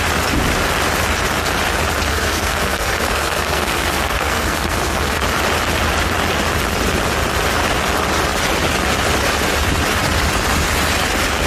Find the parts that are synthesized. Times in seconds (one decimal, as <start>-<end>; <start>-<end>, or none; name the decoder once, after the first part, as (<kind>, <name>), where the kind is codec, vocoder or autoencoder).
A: 2.1-5.2 (codec, SNAC)